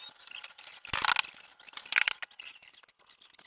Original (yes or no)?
yes